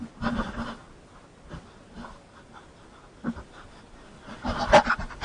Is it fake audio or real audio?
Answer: real